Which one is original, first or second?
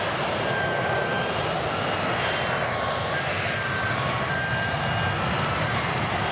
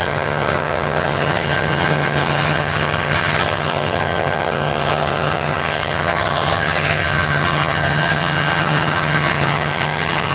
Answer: first